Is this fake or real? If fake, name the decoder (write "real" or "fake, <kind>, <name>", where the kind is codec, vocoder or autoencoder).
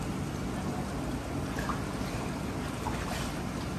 real